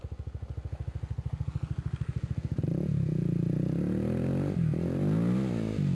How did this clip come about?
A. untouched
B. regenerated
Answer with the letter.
A